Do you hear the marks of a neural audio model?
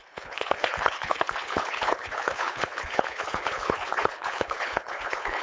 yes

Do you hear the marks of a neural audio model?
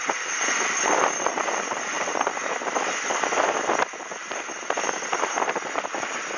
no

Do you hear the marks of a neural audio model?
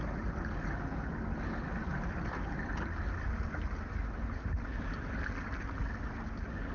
no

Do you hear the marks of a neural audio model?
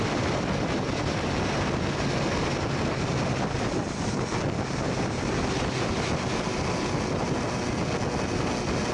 no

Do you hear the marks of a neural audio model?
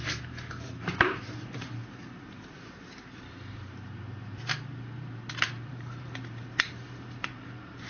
yes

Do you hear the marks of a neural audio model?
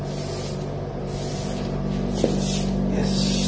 no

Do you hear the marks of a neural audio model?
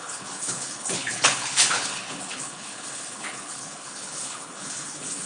yes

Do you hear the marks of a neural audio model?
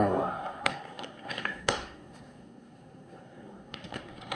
yes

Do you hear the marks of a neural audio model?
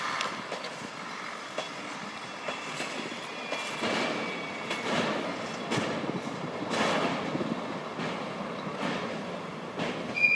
no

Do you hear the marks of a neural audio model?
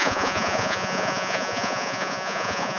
yes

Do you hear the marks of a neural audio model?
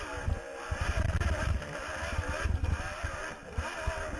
yes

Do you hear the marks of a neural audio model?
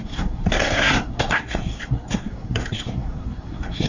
yes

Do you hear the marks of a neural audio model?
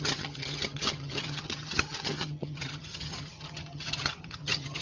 yes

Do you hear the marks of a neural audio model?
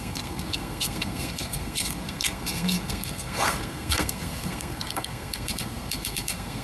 yes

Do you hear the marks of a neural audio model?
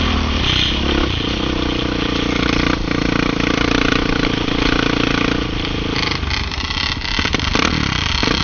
no